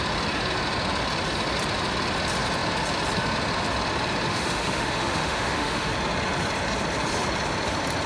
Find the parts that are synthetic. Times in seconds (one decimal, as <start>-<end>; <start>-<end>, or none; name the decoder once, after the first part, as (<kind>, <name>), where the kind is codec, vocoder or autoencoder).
4.3-5.9 (autoencoder, DAC-VAE)